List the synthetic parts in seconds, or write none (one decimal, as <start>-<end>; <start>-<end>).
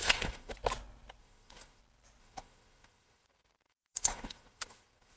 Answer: 0.0-0.5; 1.2-1.8; 2.2-5.2